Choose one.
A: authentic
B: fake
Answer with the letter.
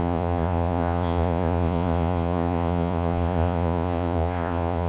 B